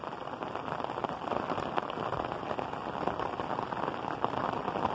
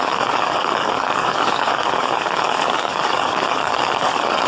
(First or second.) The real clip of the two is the first